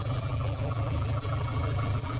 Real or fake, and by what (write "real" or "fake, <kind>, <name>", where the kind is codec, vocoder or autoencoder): fake, vocoder, BigVGAN v2